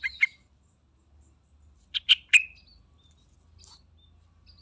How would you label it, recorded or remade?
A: recorded